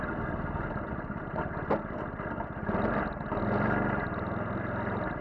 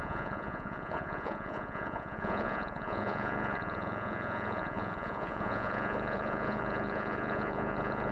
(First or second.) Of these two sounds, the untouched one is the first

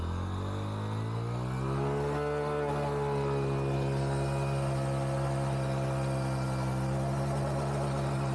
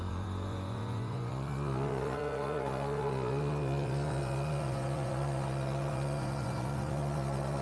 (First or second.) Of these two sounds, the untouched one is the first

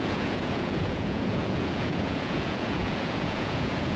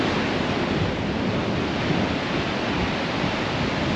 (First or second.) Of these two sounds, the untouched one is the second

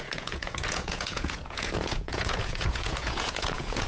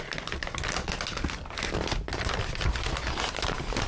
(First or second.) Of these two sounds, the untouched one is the second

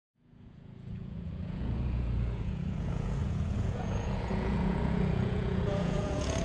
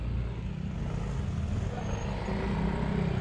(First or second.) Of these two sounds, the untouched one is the second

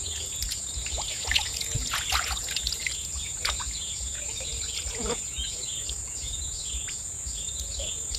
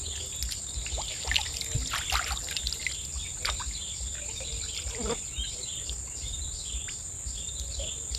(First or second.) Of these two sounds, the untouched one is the second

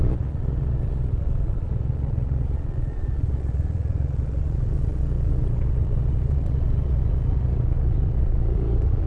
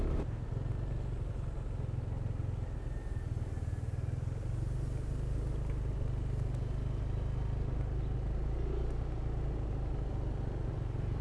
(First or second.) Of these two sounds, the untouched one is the second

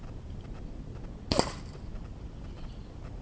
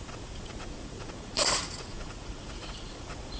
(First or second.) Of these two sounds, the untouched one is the first